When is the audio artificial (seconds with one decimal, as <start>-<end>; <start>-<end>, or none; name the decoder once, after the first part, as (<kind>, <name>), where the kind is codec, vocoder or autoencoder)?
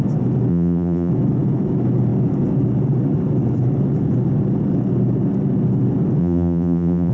0.5-1.1 (vocoder, BigVGAN v2); 6.2-7.1